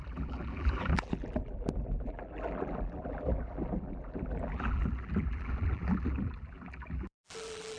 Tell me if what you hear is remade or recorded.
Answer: remade